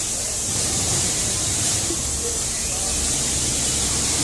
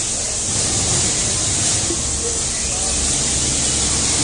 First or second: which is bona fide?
second